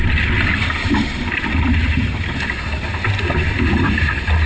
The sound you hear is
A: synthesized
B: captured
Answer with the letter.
B